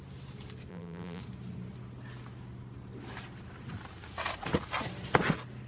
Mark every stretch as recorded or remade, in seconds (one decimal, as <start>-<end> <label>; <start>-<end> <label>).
0.0-0.7 recorded; 0.7-1.2 remade; 1.2-5.7 recorded